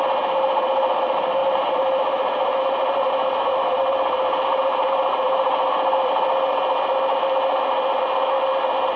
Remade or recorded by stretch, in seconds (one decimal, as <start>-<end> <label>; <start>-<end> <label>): 0.0-1.4 recorded; 1.4-6.1 remade; 6.1-9.0 recorded